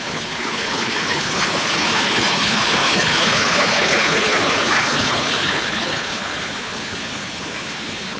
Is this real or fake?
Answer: fake